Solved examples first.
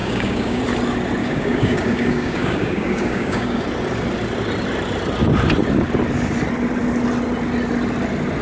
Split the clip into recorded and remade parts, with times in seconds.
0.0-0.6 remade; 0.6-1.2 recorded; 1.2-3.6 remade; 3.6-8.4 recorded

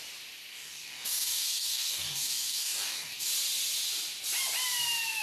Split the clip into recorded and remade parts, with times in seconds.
0.0-0.5 recorded; 0.5-3.3 remade; 3.3-5.2 recorded

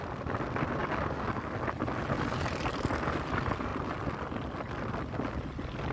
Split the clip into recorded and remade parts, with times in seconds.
0.0-0.8 recorded; 0.8-1.5 remade; 1.5-5.9 recorded

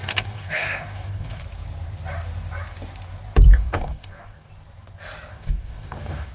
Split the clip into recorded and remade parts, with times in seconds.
0.0-1.4 remade; 1.4-3.5 recorded; 3.5-4.5 remade; 4.5-5.3 recorded; 5.3-6.3 remade

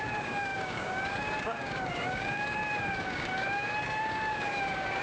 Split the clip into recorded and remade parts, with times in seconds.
0.0-5.0 remade